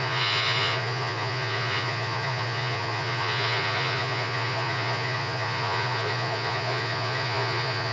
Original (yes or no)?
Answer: no